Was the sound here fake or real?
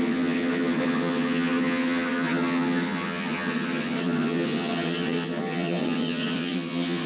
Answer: fake